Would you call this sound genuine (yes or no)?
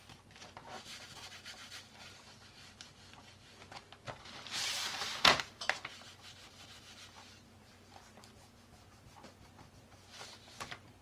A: yes